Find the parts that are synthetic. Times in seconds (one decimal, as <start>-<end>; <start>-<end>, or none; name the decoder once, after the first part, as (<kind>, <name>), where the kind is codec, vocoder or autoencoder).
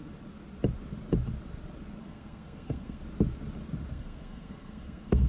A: 2.0-3.0 (codec, SNAC); 3.9-5.3